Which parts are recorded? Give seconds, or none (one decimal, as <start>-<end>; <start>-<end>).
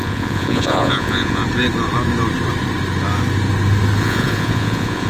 1.4-4.0